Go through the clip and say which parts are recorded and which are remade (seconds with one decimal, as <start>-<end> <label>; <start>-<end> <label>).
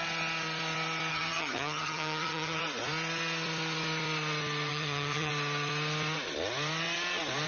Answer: 0.0-1.1 recorded; 1.1-2.6 remade; 2.6-4.7 recorded; 4.7-5.3 remade; 5.3-7.5 recorded